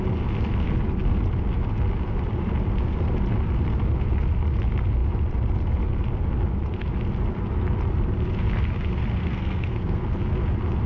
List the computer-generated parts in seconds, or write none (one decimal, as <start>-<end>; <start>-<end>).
9.2-10.0